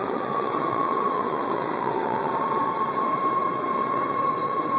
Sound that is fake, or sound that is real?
fake